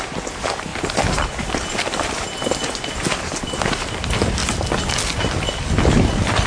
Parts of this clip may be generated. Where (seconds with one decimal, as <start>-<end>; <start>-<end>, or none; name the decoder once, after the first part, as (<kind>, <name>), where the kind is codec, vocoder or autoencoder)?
none